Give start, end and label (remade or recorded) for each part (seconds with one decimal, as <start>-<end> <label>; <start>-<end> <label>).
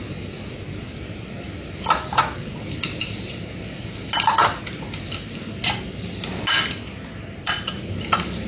0.0-8.5 recorded